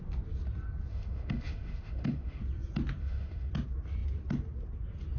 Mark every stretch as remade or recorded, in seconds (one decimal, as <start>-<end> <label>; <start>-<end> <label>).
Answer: 0.0-0.9 recorded; 0.9-2.4 remade; 2.4-3.0 recorded; 3.0-3.5 remade; 3.5-5.2 recorded